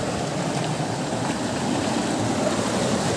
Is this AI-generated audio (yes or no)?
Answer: no